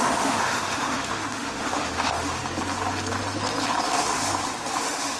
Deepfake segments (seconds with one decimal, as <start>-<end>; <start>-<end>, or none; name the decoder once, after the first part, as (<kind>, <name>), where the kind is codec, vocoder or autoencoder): 0.0-2.4 (autoencoder, DAC-VAE); 4.8-5.2